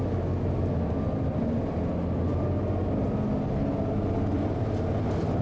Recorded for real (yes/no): yes